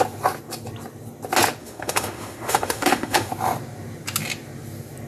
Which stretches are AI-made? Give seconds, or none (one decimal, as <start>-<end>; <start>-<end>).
1.6-3.3